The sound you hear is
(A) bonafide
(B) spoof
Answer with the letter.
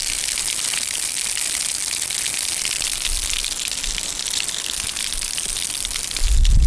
A